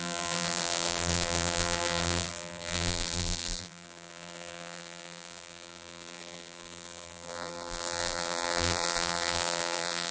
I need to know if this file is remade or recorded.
remade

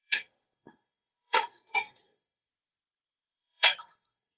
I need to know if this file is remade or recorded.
remade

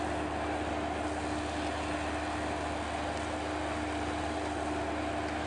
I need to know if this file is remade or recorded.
recorded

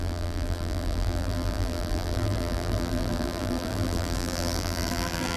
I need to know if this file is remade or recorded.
remade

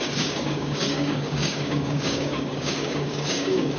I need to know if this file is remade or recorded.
remade